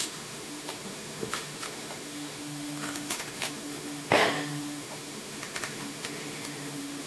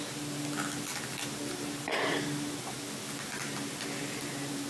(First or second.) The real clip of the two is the second